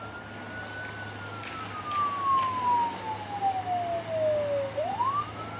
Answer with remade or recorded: recorded